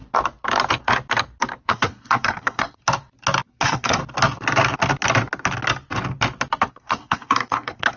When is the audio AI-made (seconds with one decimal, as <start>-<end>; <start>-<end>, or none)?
1.6-2.8; 3.6-4.0; 6.7-8.0